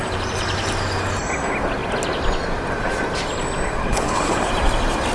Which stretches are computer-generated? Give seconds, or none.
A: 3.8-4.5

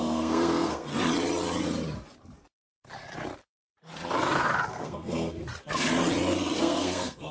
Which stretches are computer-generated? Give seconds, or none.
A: 0.0-0.9; 4.7-5.4; 6.6-7.3

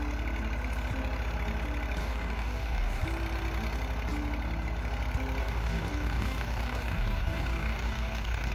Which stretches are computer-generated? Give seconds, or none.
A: 2.0-3.0; 5.4-8.5

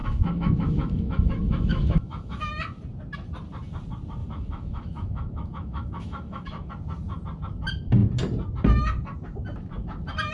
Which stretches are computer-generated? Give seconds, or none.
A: 0.0-2.5; 4.2-6.7